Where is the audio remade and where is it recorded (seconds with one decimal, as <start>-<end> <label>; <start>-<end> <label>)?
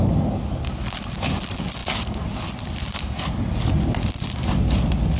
0.0-5.2 recorded